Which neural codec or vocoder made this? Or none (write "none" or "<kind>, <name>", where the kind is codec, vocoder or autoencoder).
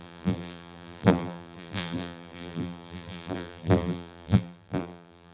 vocoder, BigVGAN v2